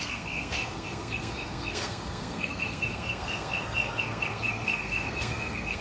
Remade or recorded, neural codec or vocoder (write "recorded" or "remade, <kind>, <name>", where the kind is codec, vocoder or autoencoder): remade, codec, SNAC